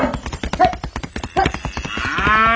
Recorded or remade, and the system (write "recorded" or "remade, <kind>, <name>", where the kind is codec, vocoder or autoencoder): recorded